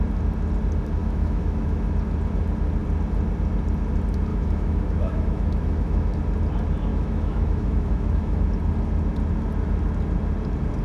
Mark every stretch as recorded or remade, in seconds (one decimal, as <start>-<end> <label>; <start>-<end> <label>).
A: 0.0-1.0 recorded; 1.0-1.8 remade; 1.8-4.3 recorded; 4.3-6.2 remade; 6.2-6.9 recorded; 6.9-8.5 remade; 8.5-10.8 recorded